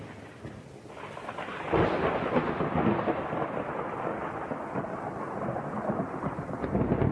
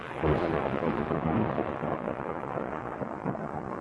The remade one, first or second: second